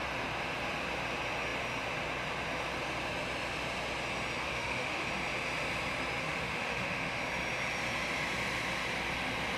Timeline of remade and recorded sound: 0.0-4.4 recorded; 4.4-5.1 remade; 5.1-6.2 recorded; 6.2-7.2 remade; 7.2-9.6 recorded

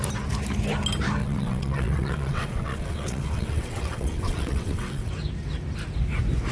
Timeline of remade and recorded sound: 0.0-1.2 recorded; 1.2-5.1 remade; 5.1-6.5 recorded

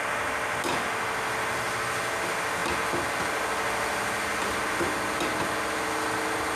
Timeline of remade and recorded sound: 0.0-6.6 recorded

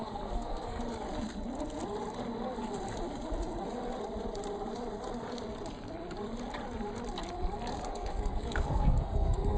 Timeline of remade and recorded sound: 0.0-0.8 remade; 0.8-7.9 recorded; 7.9-9.6 remade

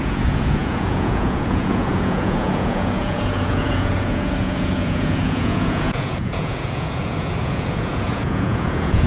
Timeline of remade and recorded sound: 0.0-9.1 remade

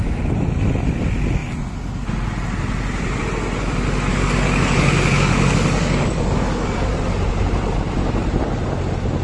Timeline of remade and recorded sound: 0.0-4.1 recorded; 4.1-6.9 remade; 6.9-9.2 recorded

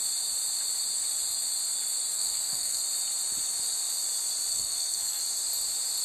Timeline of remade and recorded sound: 0.0-2.1 recorded; 2.1-2.8 remade; 2.8-4.5 recorded; 4.5-5.2 remade; 5.2-6.0 recorded